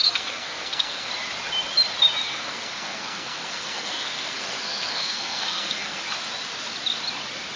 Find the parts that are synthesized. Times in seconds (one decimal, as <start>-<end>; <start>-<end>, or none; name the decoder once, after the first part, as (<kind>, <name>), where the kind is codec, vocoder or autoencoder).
0.0-1.1 (codec, SNAC); 2.3-6.0